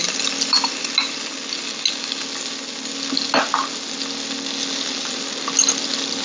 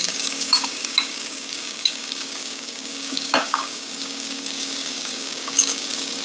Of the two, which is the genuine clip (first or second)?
first